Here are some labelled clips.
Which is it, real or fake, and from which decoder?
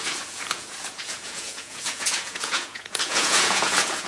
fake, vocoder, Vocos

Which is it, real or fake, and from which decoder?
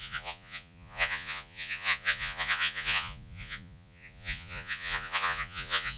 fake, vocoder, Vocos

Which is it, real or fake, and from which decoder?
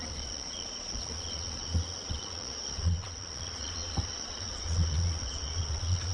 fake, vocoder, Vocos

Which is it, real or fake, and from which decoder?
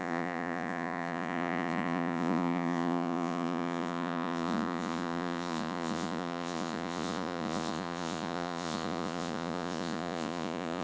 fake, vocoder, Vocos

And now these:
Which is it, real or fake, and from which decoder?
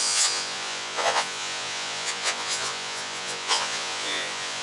fake, vocoder, Vocos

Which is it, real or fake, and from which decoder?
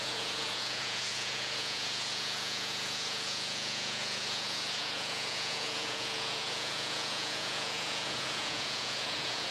fake, vocoder, Vocos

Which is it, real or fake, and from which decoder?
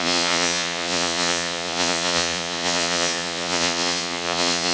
fake, vocoder, Vocos